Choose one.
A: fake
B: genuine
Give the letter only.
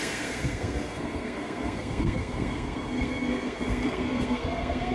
A